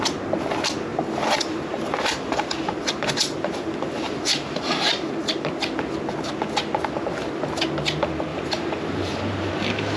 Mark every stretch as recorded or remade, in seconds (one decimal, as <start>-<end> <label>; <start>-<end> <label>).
0.0-0.9 recorded; 0.9-5.1 remade; 5.1-8.3 recorded; 8.3-9.5 remade; 9.5-10.0 recorded

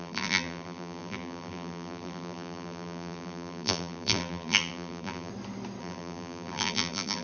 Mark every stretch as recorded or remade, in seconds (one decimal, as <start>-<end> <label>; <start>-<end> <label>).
0.0-5.3 remade; 5.3-5.8 recorded; 5.8-7.2 remade